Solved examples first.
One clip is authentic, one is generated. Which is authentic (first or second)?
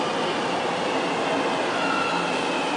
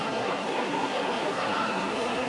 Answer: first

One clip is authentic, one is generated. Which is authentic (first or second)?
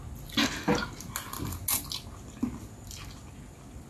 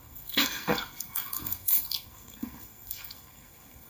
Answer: first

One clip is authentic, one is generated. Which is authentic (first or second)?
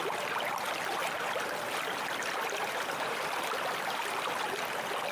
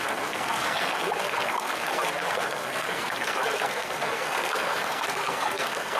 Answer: first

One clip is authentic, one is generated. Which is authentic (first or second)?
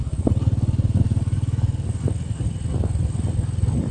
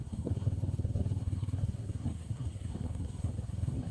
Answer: first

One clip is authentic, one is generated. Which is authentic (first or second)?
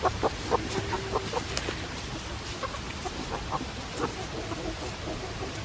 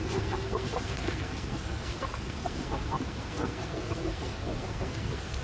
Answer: first